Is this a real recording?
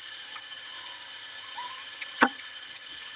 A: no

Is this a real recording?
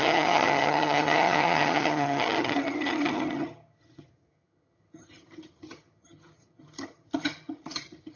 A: no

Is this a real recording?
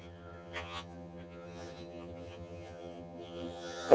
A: no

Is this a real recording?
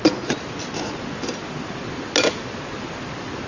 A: yes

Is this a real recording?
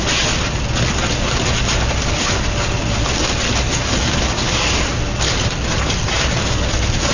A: yes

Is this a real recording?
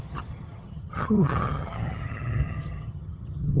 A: no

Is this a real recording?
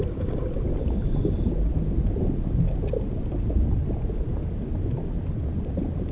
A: yes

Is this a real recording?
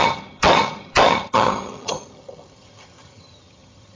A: no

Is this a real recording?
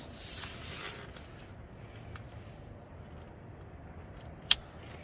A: yes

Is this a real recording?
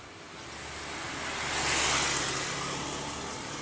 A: yes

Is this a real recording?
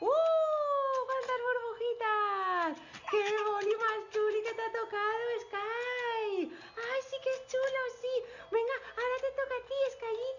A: yes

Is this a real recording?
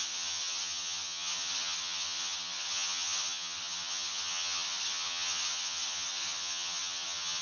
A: no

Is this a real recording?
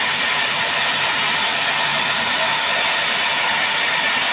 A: yes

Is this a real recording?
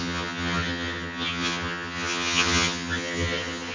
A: no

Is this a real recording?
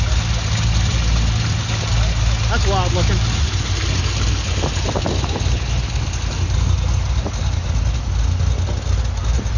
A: yes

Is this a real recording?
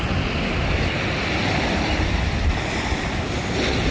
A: yes